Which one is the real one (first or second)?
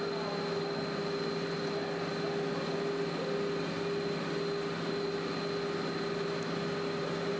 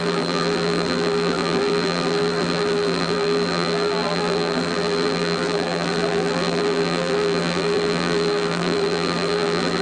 first